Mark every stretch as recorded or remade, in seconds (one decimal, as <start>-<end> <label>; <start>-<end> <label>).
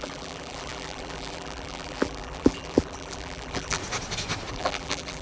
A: 0.0-3.8 remade; 3.8-4.5 recorded; 4.5-5.2 remade